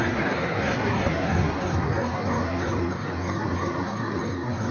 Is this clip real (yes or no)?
no